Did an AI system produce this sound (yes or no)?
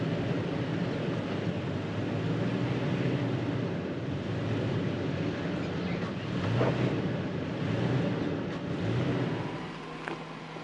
no